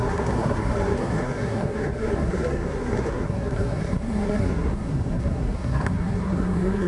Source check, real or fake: fake